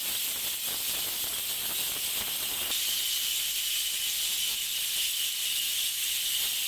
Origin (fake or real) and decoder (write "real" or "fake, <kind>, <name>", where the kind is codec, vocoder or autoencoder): real